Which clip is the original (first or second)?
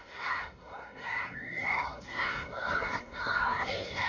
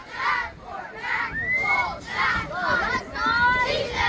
second